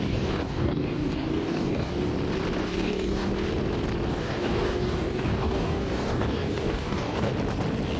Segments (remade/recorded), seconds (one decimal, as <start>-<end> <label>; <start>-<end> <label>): 0.0-2.1 remade; 2.1-2.6 recorded; 2.6-3.3 remade; 3.3-4.1 recorded; 4.1-7.3 remade; 7.3-8.0 recorded